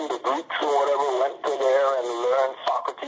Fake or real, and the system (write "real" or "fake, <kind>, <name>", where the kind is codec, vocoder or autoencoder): real